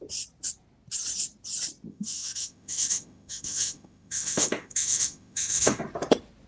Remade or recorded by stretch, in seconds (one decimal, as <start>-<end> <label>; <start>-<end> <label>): 0.0-1.9 recorded; 1.9-5.8 remade; 5.8-6.5 recorded